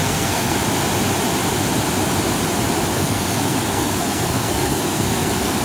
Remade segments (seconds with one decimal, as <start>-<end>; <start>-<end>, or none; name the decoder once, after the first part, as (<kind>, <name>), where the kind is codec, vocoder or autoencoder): 0.0-0.6 (codec, SNAC); 2.9-5.6